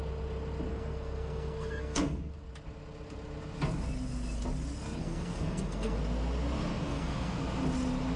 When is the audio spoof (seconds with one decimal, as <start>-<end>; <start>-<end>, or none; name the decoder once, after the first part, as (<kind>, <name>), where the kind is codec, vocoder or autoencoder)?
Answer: 0.7-2.3 (codec, SNAC); 5.0-6.0; 6.7-7.4